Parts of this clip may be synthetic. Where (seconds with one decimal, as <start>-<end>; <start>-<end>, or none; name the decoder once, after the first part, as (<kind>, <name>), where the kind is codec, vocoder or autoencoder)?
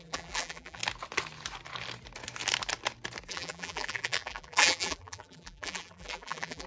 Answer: 0.0-0.8 (vocoder, BigVGAN v2); 3.3-6.7